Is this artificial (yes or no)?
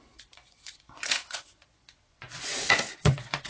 yes